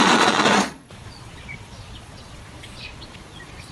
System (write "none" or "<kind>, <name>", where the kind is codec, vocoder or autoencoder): vocoder, Vocos